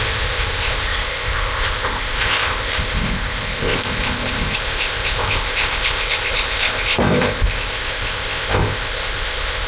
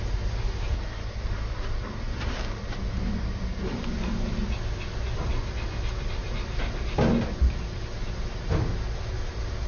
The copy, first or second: first